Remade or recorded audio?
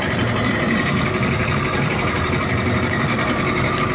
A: recorded